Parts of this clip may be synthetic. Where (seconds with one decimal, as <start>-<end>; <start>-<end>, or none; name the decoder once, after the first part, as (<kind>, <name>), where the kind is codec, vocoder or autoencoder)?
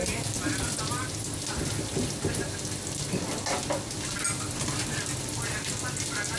none